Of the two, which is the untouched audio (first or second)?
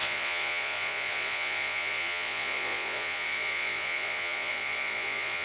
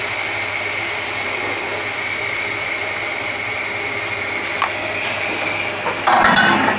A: second